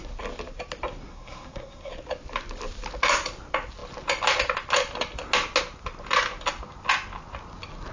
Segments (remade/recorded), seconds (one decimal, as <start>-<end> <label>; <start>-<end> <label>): 0.0-1.1 recorded; 1.1-1.9 remade; 1.9-7.9 recorded